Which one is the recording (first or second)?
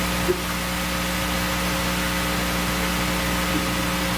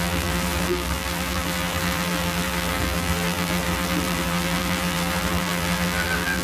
first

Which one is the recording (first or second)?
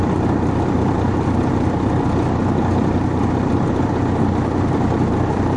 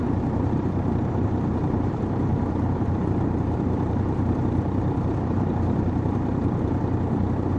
first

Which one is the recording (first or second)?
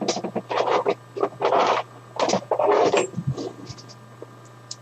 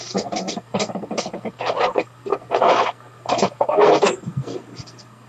first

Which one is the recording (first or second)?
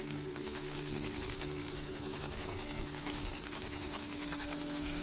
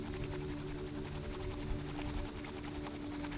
second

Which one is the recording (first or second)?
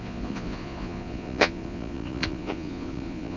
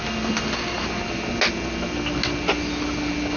second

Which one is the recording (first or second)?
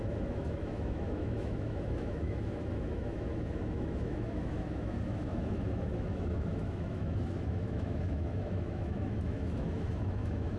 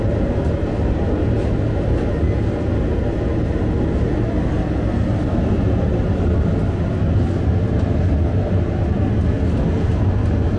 second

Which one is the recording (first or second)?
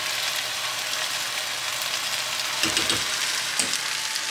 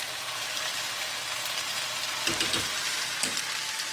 first